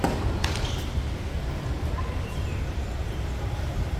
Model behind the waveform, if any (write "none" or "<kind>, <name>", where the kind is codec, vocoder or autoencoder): none